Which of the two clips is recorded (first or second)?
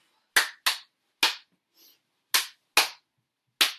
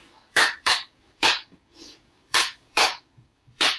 first